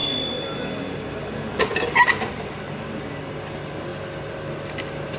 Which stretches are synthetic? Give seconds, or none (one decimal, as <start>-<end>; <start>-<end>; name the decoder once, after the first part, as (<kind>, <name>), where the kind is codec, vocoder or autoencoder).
none